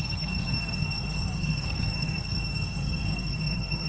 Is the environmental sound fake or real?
fake